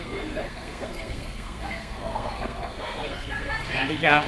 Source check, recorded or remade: remade